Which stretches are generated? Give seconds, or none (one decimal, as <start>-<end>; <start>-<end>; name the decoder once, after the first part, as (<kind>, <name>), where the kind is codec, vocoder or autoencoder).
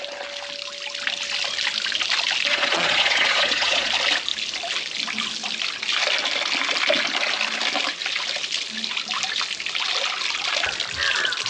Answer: 2.5-3.9 (vocoder, Vocos)